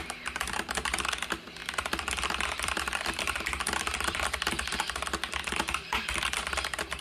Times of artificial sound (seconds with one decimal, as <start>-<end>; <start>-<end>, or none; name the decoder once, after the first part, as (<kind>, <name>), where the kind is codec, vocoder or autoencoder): 1.6-5.4 (vocoder, BigVGAN v2)